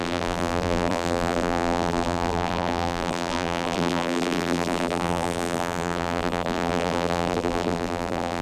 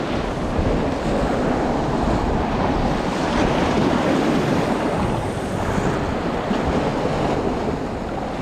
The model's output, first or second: first